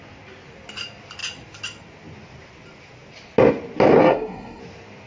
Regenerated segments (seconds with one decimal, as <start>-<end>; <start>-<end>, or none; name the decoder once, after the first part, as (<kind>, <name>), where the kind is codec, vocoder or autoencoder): 4.0-4.6 (codec, SNAC)